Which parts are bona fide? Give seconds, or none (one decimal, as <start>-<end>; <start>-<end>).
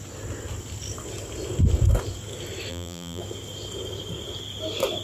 0.0-2.7; 3.2-5.0